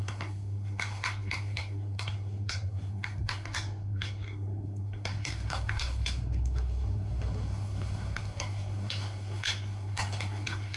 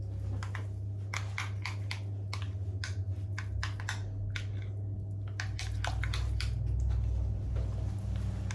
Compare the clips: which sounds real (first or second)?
second